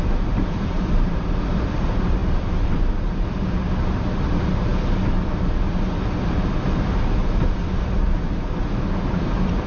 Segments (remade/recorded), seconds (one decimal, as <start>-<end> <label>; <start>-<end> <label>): 0.0-4.7 remade; 4.7-8.6 recorded; 8.6-9.7 remade